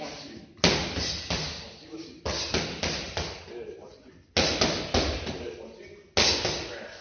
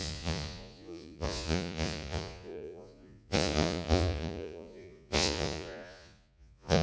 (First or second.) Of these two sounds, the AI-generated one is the second